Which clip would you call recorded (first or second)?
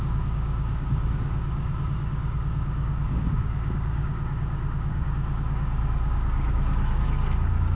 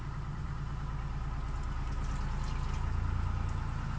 second